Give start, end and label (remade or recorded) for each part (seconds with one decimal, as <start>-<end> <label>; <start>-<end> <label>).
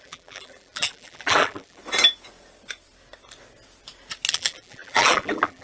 0.0-1.8 remade; 1.8-4.3 recorded; 4.3-5.6 remade